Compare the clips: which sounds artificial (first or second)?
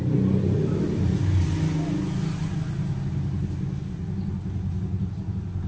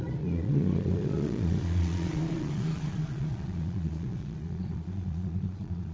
second